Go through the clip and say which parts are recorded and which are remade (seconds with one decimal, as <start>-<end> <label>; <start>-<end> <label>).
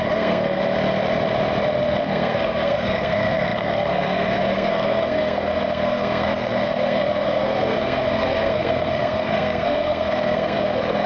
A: 0.0-0.6 remade; 0.6-1.8 recorded; 1.8-11.1 remade